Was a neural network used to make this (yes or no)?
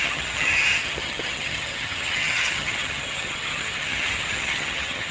yes